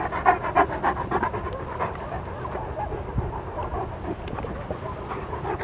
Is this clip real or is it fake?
real